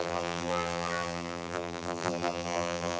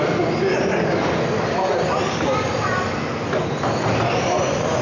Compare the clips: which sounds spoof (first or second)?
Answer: first